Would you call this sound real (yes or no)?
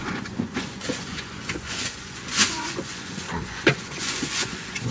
no